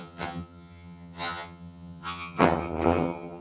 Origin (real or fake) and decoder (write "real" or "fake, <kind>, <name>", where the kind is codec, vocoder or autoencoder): fake, vocoder, HiFi-GAN